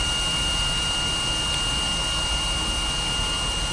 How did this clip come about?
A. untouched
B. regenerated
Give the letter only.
A